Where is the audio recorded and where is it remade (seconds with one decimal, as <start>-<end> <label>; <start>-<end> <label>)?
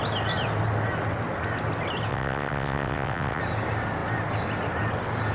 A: 0.0-2.1 recorded; 2.1-3.4 remade; 3.4-5.3 recorded